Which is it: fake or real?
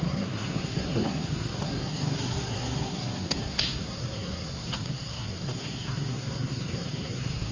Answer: fake